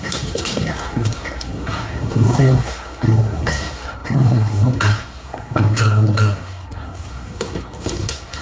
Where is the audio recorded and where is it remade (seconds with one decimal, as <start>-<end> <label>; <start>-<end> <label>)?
0.0-8.4 remade